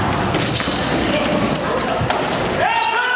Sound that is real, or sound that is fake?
real